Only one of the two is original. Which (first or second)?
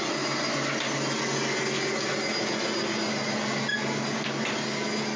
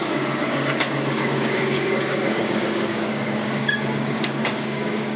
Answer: first